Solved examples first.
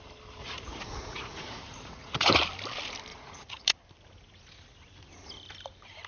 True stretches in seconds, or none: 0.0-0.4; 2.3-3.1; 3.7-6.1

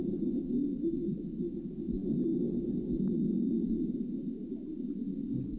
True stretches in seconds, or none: 0.0-5.6